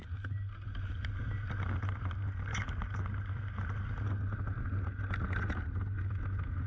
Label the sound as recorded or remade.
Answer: recorded